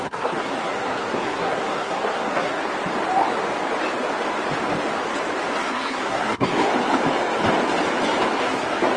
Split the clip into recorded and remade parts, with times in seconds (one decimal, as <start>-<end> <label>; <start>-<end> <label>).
0.0-2.6 remade; 2.6-5.6 recorded; 5.6-6.7 remade; 6.7-8.4 recorded; 8.4-9.0 remade